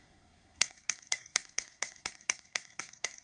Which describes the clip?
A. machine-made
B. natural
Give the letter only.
A